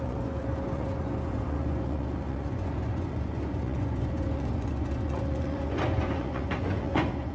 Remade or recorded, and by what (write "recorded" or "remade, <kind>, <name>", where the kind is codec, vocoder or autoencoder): remade, vocoder, Vocos